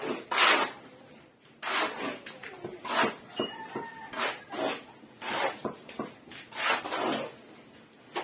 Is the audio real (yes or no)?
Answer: yes